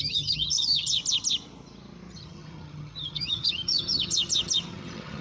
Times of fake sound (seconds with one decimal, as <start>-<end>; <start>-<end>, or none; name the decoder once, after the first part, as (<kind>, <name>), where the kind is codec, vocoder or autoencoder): 0.0-1.0 (vocoder, HiFi-GAN); 2.1-5.2